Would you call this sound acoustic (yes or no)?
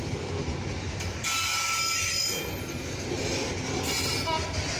yes